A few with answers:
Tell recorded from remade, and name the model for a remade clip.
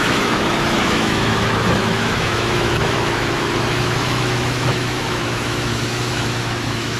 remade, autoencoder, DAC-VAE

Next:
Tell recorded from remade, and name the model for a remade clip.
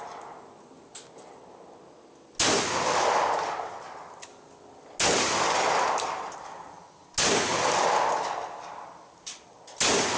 recorded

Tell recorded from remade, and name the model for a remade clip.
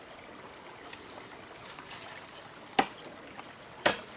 recorded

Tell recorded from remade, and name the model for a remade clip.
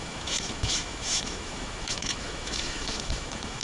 remade, autoencoder, DAC-VAE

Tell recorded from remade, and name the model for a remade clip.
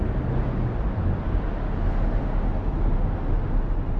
recorded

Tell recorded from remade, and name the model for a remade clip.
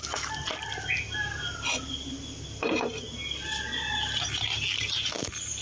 recorded